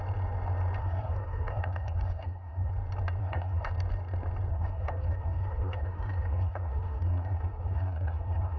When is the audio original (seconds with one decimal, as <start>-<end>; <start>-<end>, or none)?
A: 0.0-0.8; 2.7-3.2; 3.7-4.5